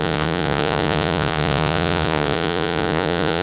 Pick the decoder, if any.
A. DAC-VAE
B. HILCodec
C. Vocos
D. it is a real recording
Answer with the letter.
C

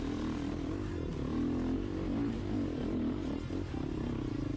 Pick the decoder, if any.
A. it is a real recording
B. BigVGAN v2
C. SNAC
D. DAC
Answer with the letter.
A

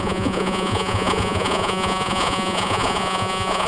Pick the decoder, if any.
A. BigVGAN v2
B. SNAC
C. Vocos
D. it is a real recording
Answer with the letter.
C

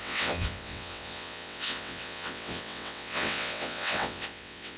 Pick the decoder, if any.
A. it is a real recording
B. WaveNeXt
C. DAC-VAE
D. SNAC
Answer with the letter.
B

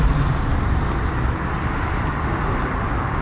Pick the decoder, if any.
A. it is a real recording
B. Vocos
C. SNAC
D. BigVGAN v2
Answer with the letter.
A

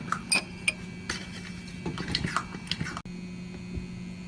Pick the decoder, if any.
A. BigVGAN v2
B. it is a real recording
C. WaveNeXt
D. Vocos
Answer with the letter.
B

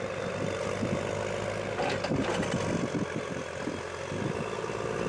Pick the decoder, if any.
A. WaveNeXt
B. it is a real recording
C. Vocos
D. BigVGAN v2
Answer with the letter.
B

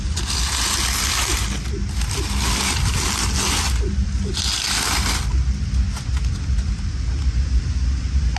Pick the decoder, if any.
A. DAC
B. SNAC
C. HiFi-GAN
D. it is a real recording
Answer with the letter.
D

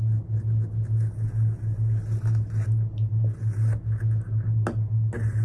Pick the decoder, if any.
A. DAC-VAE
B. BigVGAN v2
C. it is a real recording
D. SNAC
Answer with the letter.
C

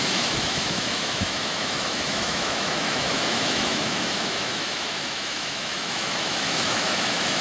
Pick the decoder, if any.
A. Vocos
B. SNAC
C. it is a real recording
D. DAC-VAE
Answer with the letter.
D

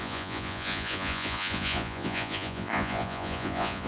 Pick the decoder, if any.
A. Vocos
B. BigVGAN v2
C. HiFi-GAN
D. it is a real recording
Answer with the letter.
A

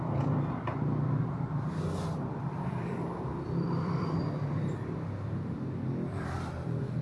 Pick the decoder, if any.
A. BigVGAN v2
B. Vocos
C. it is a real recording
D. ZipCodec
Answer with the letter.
A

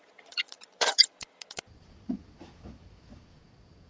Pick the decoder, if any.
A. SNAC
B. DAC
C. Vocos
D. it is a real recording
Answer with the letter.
C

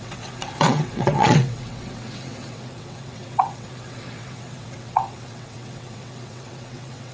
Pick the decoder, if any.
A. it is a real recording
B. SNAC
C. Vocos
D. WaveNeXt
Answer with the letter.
D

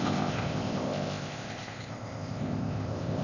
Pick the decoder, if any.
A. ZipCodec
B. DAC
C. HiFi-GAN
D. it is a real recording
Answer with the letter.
A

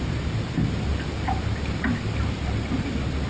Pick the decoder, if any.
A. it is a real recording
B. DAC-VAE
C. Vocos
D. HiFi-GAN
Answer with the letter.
A